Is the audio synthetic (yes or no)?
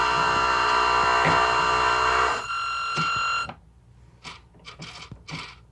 no